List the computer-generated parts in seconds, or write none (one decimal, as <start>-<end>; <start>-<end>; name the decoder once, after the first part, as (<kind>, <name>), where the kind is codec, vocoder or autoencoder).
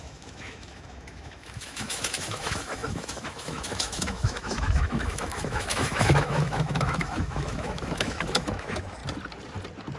0.0-9.0 (autoencoder, DAC-VAE)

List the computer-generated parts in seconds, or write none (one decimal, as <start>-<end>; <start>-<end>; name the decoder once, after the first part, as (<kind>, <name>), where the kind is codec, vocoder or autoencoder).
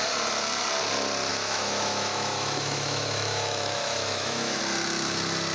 1.3-4.6 (autoencoder, DAC-VAE)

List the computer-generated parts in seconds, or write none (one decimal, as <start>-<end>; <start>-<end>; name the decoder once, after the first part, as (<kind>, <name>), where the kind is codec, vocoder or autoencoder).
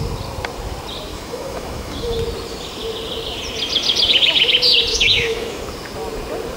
1.1-2.2 (autoencoder, DAC-VAE); 4.9-5.6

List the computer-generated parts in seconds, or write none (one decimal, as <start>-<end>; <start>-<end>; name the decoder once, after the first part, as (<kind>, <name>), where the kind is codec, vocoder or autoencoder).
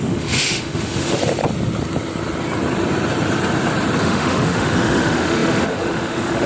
0.0-1.2 (autoencoder, DAC-VAE); 4.0-6.5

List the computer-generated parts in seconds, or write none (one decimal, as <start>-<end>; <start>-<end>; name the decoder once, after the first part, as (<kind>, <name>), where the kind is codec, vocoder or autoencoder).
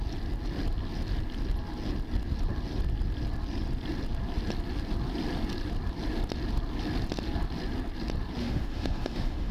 8.4-9.5 (autoencoder, DAC-VAE)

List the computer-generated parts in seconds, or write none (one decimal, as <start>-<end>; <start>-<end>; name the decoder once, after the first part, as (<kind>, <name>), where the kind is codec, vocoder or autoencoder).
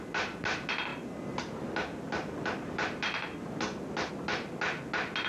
none